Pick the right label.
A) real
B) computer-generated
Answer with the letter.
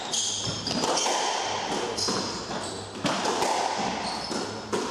A